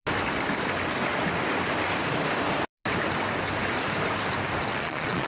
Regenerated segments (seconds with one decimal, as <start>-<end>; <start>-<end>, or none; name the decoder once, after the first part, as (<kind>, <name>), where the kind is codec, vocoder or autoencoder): 4.7-5.3 (vocoder, Vocos)